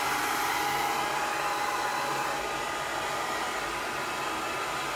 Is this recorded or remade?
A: recorded